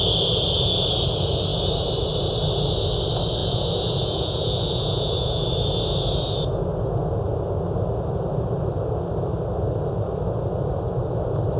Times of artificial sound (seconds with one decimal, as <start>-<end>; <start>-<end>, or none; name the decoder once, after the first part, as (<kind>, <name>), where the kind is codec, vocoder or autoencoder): 3.4-5.5 (vocoder, Vocos)